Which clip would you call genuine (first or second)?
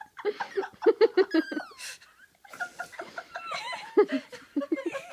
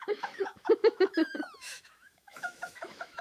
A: first